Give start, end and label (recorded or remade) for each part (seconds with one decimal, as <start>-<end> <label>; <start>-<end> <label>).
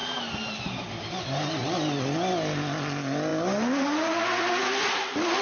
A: 0.0-5.4 recorded